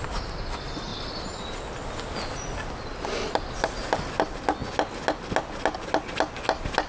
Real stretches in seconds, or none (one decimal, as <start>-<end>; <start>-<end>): 0.0-6.9